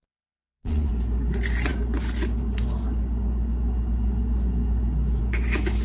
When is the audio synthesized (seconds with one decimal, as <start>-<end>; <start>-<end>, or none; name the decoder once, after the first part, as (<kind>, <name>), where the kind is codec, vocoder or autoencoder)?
0.0-0.9 (vocoder, Vocos)